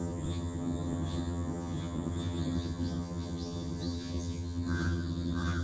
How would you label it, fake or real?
fake